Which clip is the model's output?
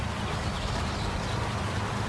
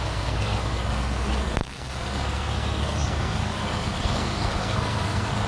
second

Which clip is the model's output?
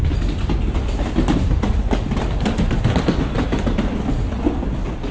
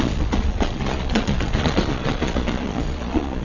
second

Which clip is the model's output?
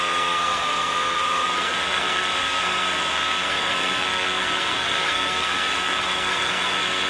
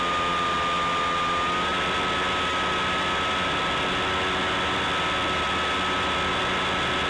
first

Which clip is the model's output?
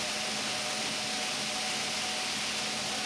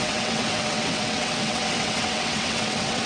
second